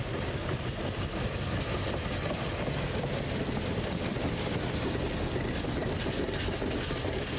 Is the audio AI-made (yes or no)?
no